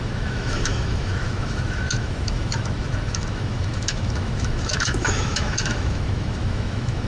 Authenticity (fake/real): fake